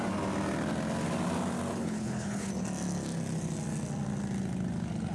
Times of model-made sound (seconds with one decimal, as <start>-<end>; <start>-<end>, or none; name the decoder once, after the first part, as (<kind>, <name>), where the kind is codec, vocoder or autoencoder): 1.7-2.5 (codec, HILCodec)